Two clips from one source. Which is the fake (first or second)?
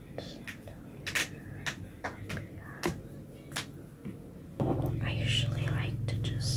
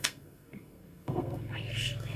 second